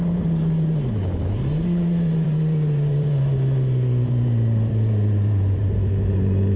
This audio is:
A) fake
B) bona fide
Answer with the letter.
A